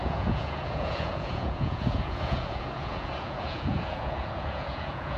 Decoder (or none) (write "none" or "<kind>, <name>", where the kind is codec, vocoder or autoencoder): vocoder, Vocos